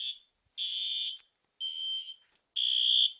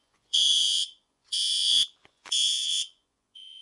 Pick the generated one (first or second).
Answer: second